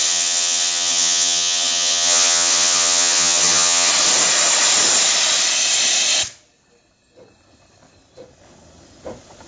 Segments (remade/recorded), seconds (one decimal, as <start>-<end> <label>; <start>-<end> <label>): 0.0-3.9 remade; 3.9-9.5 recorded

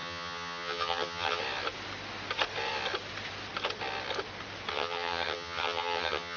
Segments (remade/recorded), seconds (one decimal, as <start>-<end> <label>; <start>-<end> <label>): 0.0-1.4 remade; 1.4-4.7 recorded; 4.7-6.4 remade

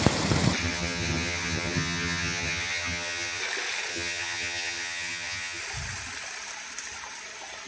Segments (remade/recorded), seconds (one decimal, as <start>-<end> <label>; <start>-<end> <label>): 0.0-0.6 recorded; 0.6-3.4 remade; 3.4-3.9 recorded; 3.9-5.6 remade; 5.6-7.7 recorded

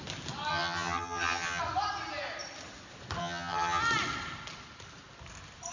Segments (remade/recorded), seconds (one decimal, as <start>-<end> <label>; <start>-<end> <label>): 0.0-0.5 recorded; 0.5-1.6 remade; 1.6-3.2 recorded; 3.2-3.8 remade; 3.8-5.7 recorded

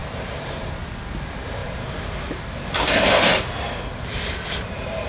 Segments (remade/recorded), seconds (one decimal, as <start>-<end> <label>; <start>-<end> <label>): 0.0-5.1 recorded

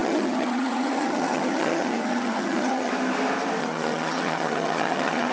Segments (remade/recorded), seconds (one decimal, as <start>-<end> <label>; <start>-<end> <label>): 0.0-2.9 remade; 2.9-3.6 recorded; 3.6-5.3 remade

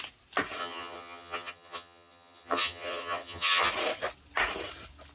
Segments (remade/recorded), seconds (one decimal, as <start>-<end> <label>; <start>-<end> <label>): 0.0-0.6 recorded; 0.6-3.7 remade; 3.7-5.1 recorded